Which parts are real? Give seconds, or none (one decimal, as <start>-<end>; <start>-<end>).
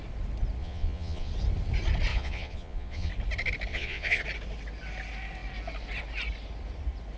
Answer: 0.0-0.6; 1.3-2.1; 3.1-3.7; 4.2-7.2